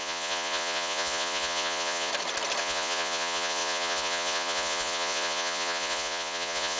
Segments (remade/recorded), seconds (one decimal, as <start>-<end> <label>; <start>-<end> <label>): 0.0-2.1 remade; 2.1-2.6 recorded; 2.6-6.8 remade